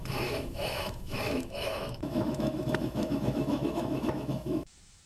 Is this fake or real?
fake